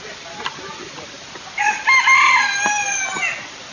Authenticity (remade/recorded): recorded